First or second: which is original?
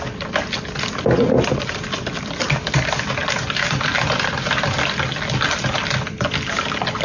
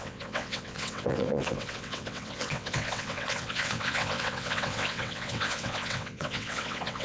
first